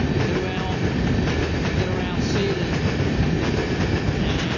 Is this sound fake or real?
real